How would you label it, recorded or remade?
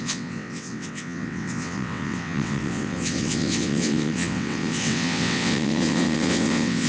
remade